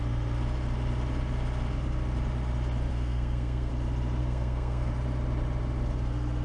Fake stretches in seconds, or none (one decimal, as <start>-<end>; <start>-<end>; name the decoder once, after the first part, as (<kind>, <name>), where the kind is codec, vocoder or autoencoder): 2.9-3.7 (codec, SNAC); 4.2-4.9